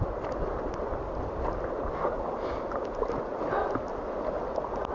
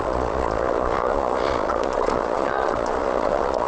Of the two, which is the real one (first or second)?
first